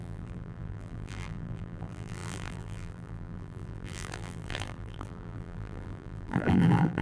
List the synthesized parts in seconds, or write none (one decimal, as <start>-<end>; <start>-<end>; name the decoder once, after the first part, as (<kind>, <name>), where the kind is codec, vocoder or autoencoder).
0.0-7.0 (vocoder, BigVGAN v2)